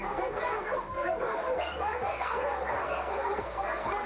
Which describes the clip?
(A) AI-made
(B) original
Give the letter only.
A